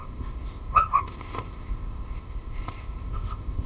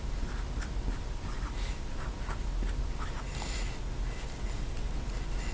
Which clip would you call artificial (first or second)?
first